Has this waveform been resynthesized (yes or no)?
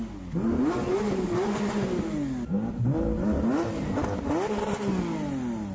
no